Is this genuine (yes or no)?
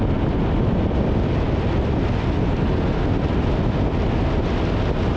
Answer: yes